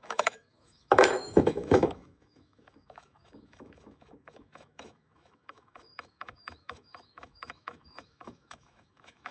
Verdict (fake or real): fake